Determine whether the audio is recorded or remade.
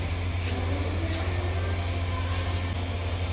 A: recorded